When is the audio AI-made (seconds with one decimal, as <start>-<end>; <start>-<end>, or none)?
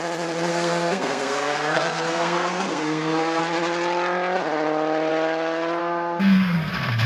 0.5-3.4; 5.8-7.1